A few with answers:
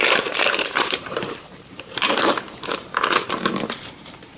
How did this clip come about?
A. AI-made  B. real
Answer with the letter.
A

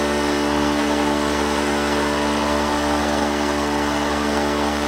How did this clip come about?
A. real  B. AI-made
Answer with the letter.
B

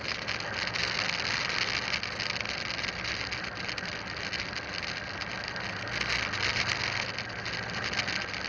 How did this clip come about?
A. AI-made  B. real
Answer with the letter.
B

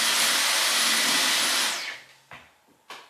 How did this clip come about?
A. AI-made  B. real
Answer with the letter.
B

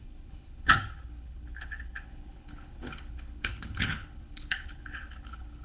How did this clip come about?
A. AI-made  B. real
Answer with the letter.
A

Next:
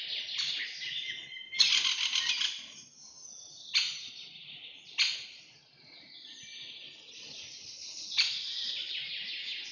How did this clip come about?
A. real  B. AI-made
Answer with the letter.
A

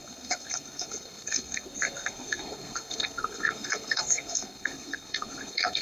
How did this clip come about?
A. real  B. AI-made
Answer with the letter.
B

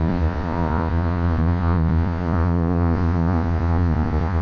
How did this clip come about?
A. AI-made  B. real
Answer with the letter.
A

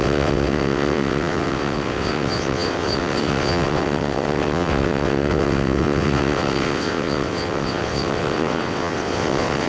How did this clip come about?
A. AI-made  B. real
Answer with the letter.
A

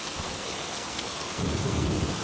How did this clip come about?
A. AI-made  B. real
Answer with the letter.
A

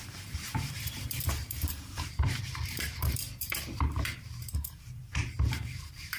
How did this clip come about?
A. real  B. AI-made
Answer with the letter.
B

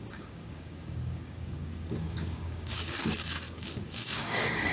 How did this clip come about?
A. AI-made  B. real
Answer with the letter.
A